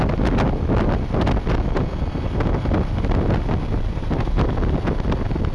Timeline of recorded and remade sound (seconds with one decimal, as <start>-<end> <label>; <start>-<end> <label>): 0.0-3.9 recorded; 3.9-4.5 remade; 4.5-5.5 recorded